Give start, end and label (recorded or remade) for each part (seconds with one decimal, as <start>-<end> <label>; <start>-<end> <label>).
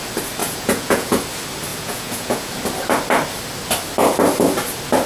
0.0-0.4 recorded; 0.4-1.2 remade; 1.2-1.7 recorded; 1.7-2.5 remade; 2.5-5.1 recorded